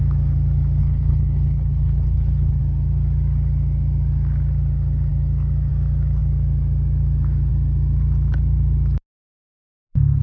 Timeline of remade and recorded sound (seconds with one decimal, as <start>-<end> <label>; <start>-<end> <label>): 0.0-0.8 recorded; 0.8-2.6 remade; 2.6-10.2 recorded